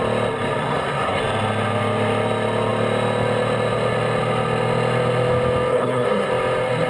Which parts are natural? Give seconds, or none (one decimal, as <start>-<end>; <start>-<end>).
0.0-0.6; 1.2-5.7; 6.3-6.9